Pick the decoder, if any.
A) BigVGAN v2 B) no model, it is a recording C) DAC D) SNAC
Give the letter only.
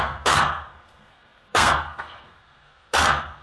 D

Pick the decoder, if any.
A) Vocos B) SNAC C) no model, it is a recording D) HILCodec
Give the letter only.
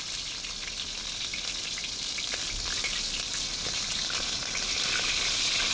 C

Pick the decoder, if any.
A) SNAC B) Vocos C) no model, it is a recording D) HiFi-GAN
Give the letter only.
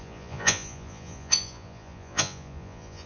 B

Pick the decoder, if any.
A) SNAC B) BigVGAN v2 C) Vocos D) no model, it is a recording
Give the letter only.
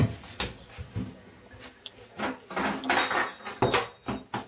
D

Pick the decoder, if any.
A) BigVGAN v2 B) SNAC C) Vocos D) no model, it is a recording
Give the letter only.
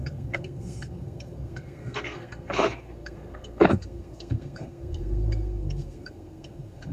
B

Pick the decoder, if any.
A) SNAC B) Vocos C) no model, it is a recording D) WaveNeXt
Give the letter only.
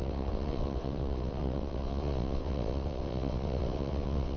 D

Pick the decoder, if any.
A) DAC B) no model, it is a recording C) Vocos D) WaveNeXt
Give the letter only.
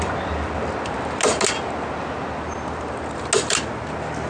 B